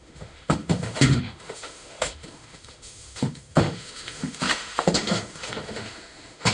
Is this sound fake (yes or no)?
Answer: yes